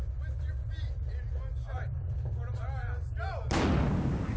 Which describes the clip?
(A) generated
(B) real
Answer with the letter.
B